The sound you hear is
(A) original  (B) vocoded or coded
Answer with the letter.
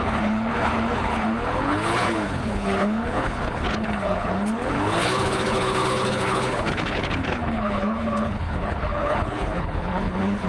B